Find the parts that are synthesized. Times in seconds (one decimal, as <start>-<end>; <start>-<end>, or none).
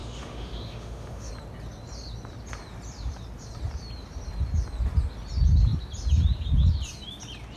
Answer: 0.0-1.3